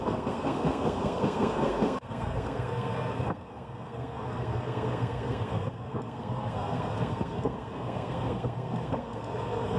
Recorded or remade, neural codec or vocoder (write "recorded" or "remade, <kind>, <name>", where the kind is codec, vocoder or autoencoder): remade, codec, SNAC